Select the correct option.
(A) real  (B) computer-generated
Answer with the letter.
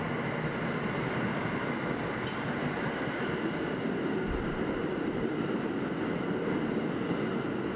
A